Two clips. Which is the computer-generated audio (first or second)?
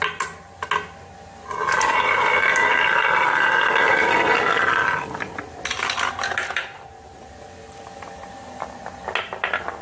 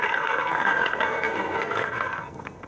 second